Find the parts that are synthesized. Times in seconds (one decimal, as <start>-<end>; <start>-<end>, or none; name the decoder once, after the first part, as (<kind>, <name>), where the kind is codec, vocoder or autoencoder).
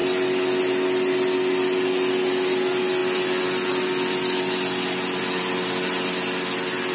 none